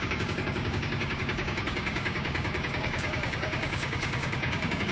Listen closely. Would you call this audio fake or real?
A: fake